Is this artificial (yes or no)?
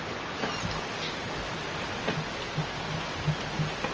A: no